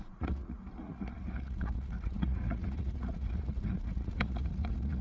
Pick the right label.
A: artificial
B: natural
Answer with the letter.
A